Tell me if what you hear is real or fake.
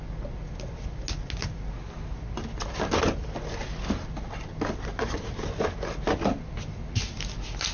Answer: real